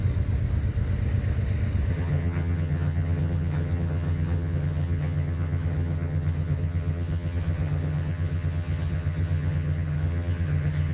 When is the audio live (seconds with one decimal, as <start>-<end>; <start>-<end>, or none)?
0.0-1.9

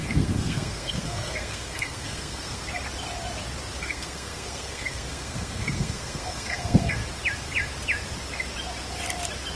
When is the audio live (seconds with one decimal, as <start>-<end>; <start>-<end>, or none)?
2.6-3.8; 7.0-9.6

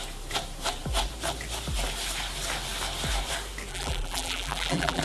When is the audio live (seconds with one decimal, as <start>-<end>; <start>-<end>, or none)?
0.0-3.7

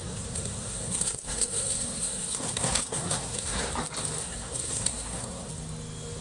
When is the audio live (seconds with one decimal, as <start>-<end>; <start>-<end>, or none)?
3.7-4.2; 5.5-6.2

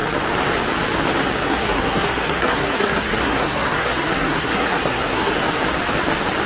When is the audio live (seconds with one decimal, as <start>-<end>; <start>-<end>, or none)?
0.0-1.4; 5.3-6.5

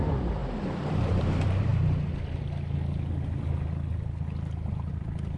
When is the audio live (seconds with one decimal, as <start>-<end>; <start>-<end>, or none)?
1.7-4.9

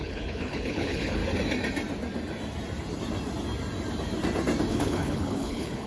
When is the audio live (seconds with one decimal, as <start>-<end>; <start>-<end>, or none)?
1.2-4.7